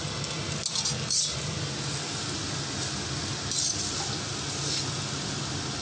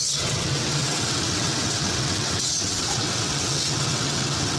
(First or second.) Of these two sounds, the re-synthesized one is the second